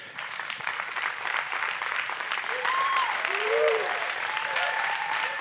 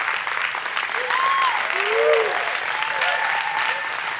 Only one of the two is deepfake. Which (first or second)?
first